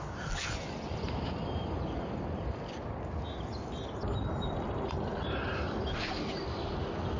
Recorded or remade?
recorded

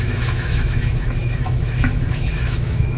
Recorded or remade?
remade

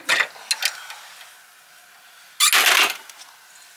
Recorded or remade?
recorded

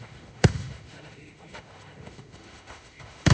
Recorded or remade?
remade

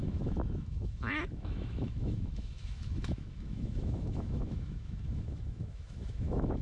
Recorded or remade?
remade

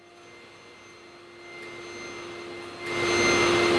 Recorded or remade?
recorded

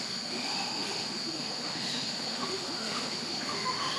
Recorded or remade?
remade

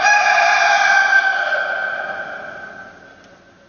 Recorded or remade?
recorded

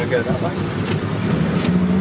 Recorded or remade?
recorded